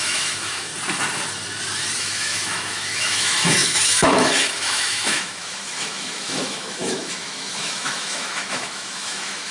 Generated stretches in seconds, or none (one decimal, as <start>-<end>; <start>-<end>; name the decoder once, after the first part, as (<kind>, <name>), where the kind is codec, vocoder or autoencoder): 0.0-0.7 (autoencoder, DAC-VAE); 2.0-9.5